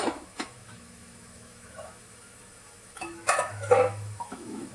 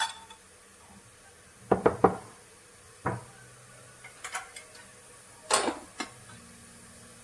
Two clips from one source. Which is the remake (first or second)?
first